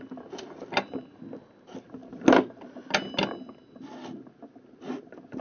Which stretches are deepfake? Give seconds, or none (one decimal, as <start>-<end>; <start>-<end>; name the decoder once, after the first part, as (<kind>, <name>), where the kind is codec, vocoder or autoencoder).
none